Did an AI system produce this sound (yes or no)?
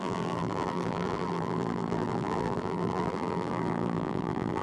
yes